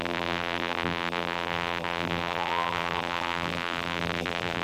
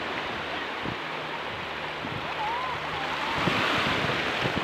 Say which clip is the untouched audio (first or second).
second